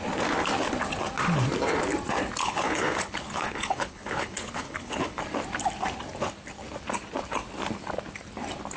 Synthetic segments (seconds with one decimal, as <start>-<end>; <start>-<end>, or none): 2.4-5.2